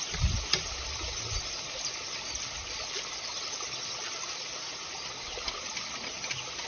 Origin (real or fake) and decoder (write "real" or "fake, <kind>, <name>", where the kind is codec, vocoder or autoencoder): real